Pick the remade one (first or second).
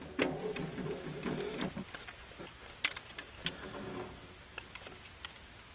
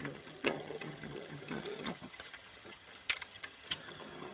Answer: second